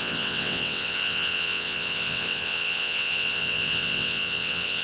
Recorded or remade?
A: remade